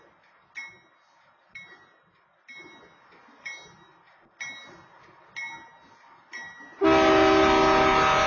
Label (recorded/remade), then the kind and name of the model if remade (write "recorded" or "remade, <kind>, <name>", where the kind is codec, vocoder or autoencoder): recorded